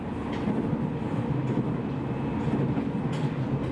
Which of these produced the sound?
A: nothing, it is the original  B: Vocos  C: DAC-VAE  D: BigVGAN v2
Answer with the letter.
A